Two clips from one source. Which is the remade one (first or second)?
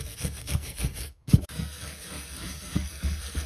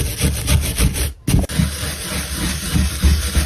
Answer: first